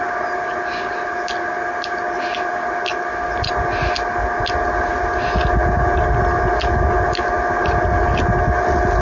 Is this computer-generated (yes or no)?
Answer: no